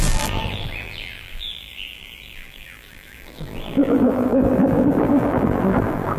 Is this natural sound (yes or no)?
no